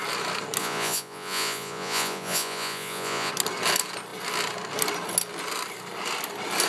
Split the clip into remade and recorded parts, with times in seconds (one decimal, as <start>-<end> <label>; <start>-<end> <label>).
0.0-0.6 recorded; 0.6-3.3 remade; 3.3-6.7 recorded

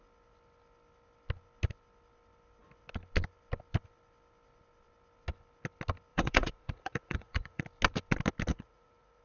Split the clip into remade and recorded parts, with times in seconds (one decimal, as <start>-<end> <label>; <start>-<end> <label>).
0.0-6.1 recorded; 6.1-7.6 remade; 7.6-8.5 recorded; 8.5-9.2 remade

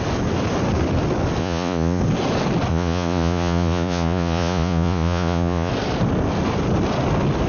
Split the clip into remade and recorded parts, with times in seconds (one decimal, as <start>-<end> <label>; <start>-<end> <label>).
0.0-1.4 recorded; 1.4-2.0 remade; 2.0-2.7 recorded; 2.7-5.7 remade; 5.7-7.5 recorded

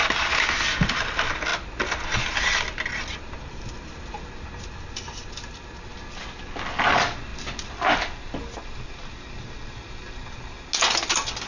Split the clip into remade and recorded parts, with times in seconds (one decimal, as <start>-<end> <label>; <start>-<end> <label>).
0.0-11.5 recorded

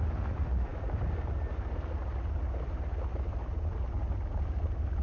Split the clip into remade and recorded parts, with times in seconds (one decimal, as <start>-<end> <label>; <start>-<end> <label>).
0.0-5.0 recorded

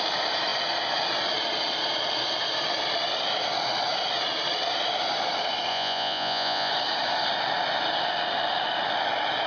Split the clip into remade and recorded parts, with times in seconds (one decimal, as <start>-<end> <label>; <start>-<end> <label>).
0.0-5.7 recorded; 5.7-6.7 remade; 6.7-9.5 recorded